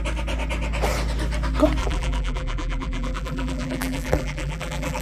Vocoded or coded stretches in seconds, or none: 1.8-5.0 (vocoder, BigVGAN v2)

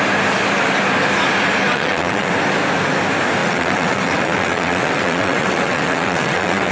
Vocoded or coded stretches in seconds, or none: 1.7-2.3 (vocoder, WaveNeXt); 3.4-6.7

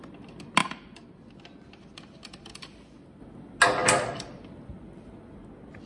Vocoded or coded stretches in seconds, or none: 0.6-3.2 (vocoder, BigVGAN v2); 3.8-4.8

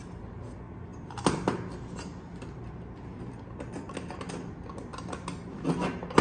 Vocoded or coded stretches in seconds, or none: none

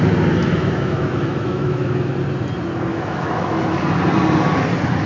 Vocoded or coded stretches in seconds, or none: 0.4-2.1 (autoencoder, DAC-VAE); 2.9-3.6

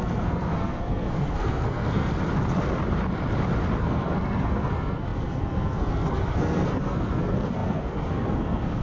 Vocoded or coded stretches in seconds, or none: 0.0-2.1 (codec, SNAC); 3.8-8.8

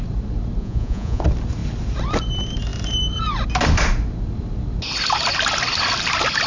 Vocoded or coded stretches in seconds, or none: 0.6-1.2 (vocoder, Vocos)